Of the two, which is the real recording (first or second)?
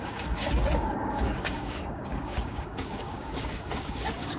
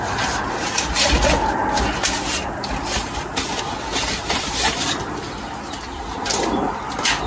second